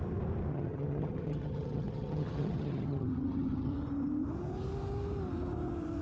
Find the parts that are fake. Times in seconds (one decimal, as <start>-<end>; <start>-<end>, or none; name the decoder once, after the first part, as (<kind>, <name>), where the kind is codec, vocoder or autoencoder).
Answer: 0.5-3.7 (vocoder, HiFi-GAN)